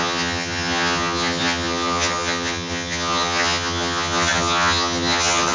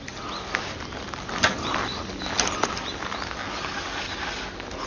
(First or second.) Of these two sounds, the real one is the second